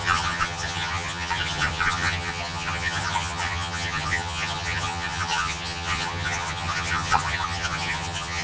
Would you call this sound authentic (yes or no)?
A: no